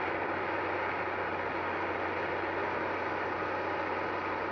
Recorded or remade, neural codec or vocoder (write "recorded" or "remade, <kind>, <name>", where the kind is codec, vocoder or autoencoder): recorded